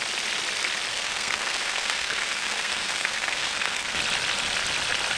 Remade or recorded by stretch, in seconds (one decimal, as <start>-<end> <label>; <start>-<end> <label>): 0.0-0.9 recorded; 0.9-4.0 remade; 4.0-5.2 recorded